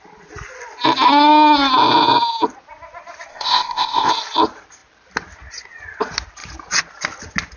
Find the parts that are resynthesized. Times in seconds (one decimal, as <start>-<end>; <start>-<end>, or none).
3.3-4.1